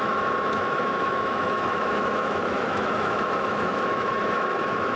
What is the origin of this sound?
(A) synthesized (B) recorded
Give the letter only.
A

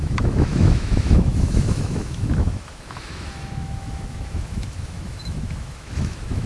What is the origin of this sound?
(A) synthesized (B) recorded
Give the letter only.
A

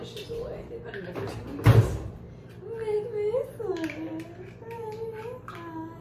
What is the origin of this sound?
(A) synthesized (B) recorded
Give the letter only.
B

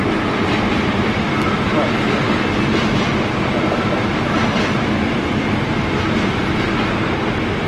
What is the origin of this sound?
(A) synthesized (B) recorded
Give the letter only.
B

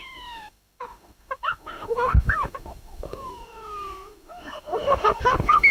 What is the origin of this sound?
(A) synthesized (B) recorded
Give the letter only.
A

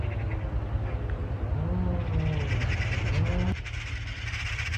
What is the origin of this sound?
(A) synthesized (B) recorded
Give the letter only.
B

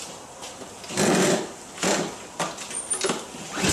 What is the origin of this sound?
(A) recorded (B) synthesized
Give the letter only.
A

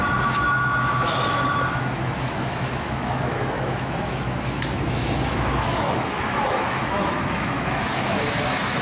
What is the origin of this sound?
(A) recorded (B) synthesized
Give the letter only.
B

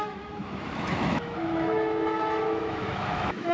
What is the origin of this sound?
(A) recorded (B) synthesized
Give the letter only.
B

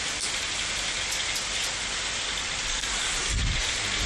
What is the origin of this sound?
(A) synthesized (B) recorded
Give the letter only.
B